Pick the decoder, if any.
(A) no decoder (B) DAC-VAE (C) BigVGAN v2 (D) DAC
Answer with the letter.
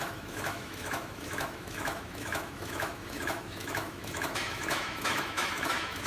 B